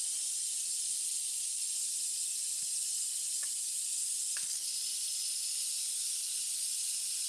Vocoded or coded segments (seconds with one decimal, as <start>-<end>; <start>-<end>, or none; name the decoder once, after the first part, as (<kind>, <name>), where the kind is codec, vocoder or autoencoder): 2.3-3.4 (vocoder, Vocos)